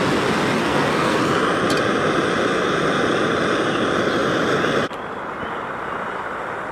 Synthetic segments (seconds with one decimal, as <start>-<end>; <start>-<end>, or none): 0.6-1.2